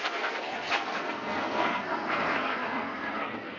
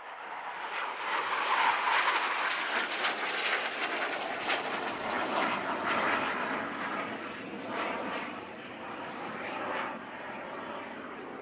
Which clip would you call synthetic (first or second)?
first